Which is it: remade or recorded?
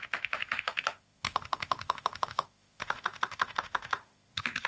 remade